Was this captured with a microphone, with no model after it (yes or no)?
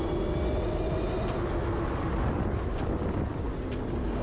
yes